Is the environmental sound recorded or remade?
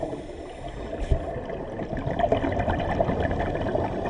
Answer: recorded